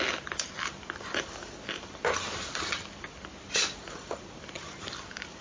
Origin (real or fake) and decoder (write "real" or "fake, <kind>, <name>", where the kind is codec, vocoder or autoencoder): real